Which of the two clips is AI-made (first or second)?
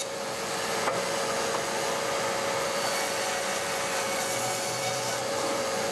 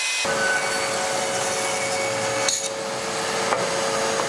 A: first